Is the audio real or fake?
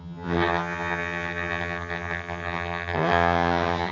fake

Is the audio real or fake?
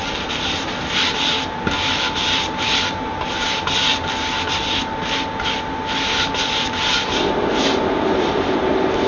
real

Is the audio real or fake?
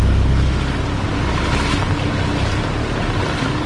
real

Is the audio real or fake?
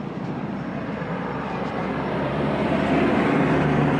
fake